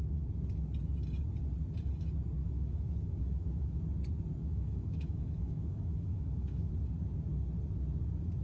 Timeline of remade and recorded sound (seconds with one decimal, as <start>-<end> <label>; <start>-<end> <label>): 0.0-2.4 recorded; 2.4-3.8 remade; 3.8-4.4 recorded; 4.4-6.7 remade; 6.7-8.4 recorded